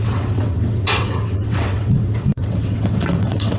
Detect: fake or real fake